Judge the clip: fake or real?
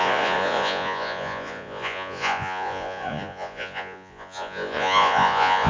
fake